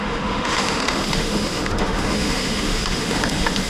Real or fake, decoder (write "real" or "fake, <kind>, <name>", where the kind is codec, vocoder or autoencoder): fake, autoencoder, DAC-VAE